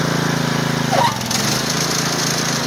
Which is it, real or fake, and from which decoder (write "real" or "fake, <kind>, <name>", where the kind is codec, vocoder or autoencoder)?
real